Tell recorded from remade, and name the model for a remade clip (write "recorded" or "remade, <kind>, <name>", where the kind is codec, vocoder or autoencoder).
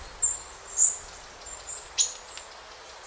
recorded